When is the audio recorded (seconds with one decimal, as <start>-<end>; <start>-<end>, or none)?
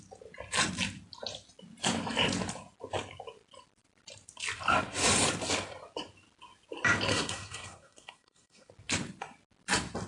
0.0-7.1; 8.7-10.1